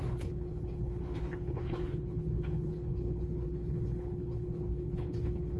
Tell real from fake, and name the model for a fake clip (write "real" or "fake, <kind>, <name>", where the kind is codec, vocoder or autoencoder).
fake, codec, HILCodec